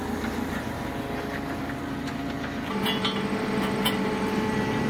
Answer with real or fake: real